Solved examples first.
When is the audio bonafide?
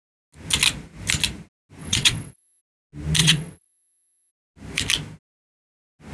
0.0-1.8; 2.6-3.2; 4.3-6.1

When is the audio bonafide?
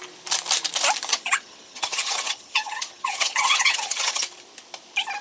0.0-1.1; 4.2-5.2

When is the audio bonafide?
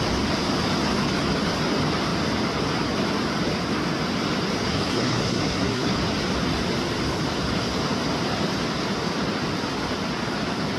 0.0-4.7; 5.9-10.8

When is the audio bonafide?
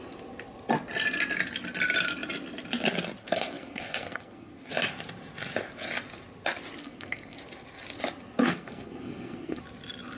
0.0-3.2; 4.7-6.8; 7.4-8.4; 9.6-10.2